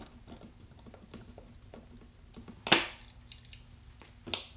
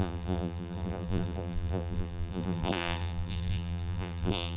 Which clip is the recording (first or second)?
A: first